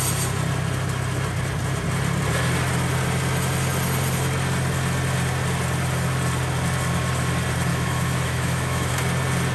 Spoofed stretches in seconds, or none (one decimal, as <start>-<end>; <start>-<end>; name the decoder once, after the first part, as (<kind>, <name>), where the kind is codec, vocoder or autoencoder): 7.7-8.9 (autoencoder, DAC-VAE)